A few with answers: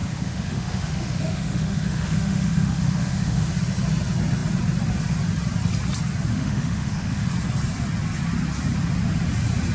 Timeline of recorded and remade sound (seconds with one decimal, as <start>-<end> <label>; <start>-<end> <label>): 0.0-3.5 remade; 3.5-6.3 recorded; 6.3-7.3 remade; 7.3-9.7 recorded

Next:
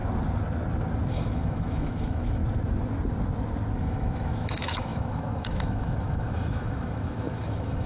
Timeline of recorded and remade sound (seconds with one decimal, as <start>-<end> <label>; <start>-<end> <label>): 0.0-1.1 recorded; 1.1-2.4 remade; 2.4-3.8 recorded; 3.8-7.9 remade

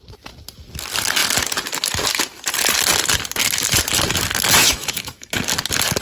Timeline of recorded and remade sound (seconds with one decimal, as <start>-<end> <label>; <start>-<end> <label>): 0.0-4.6 recorded; 4.6-5.3 remade; 5.3-6.0 recorded